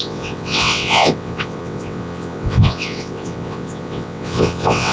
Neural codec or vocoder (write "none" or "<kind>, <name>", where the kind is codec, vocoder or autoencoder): vocoder, WaveNeXt